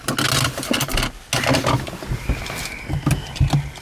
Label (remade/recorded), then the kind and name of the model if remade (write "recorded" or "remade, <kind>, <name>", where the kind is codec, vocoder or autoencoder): recorded